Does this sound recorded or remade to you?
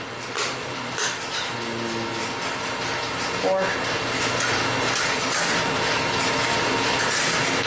recorded